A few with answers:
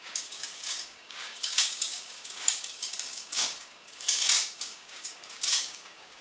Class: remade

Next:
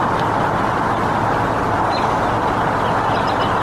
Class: recorded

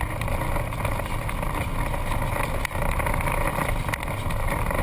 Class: recorded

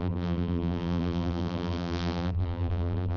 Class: remade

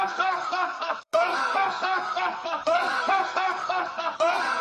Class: remade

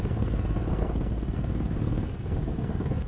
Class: remade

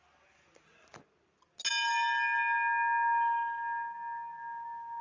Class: recorded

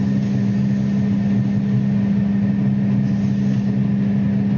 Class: recorded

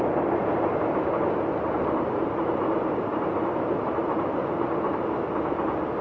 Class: recorded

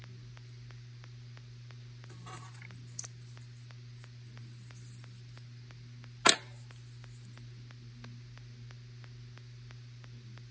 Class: recorded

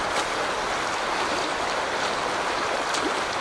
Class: recorded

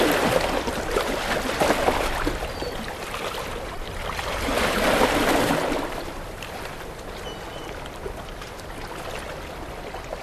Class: recorded